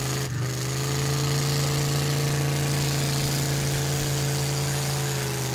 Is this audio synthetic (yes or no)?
no